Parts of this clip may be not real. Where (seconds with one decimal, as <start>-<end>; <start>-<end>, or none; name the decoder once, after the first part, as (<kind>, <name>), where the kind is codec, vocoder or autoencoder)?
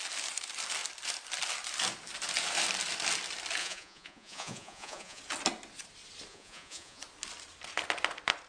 3.6-5.2 (vocoder, Vocos); 6.3-7.0